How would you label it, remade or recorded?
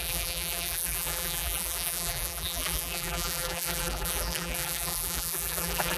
remade